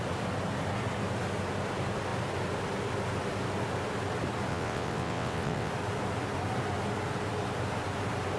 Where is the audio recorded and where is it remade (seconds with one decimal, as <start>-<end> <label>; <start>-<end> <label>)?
0.0-4.5 recorded; 4.5-5.7 remade; 5.7-8.4 recorded